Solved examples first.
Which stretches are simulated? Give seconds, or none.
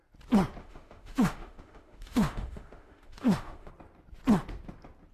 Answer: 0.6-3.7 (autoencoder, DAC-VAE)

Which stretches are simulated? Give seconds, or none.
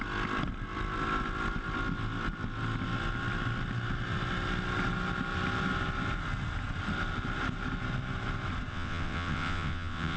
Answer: 8.7-10.2 (vocoder, WaveNeXt)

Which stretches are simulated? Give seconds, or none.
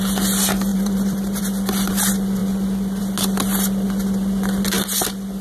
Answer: 0.7-1.4 (vocoder, BigVGAN v2)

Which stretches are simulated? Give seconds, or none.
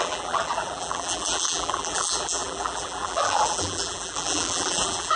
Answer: 0.0-5.2 (vocoder, BigVGAN v2)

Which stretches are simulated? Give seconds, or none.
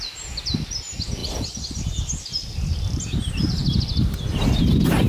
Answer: none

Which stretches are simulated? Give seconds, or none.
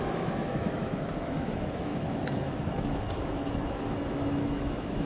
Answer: 0.0-5.1 (autoencoder, DAC-VAE)